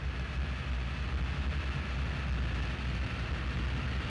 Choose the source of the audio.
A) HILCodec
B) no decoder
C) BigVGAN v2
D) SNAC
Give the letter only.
B